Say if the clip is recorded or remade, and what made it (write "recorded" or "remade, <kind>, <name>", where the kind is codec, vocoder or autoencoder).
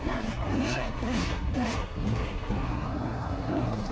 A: remade, codec, SNAC